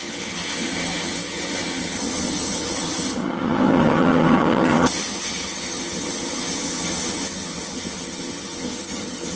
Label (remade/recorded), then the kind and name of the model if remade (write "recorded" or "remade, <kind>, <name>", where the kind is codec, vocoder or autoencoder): remade, vocoder, HiFi-GAN